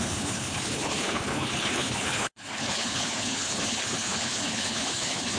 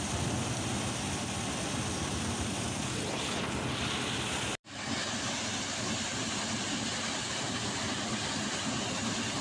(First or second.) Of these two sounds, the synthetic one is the first